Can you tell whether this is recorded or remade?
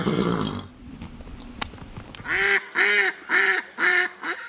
recorded